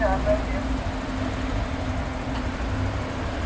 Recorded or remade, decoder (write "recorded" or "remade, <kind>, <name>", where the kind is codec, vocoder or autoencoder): recorded